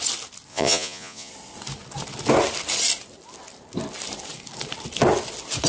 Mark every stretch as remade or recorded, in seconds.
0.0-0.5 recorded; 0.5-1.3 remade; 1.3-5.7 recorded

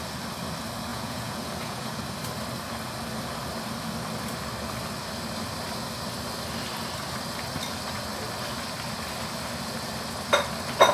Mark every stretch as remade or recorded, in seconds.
0.0-0.9 recorded; 0.9-2.0 remade; 2.0-10.9 recorded